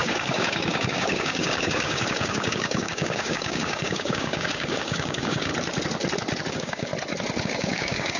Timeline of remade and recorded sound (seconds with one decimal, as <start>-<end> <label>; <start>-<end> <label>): 0.0-5.5 remade; 5.5-6.5 recorded; 6.5-6.9 remade; 6.9-7.4 recorded; 7.4-8.2 remade